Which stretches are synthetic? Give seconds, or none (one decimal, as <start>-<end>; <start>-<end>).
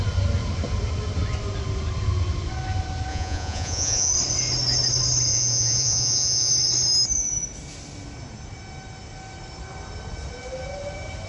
3.1-4.1; 5.3-6.5